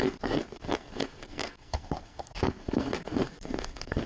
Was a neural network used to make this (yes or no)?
yes